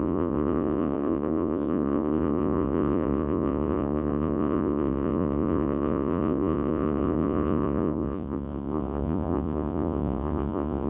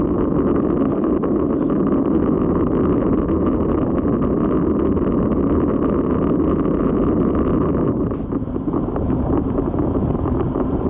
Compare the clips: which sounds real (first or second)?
second